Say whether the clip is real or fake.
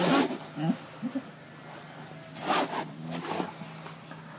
real